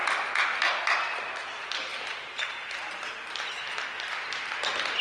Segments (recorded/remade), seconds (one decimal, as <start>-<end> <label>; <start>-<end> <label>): 0.0-5.0 recorded